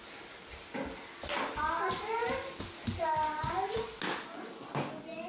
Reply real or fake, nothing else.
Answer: real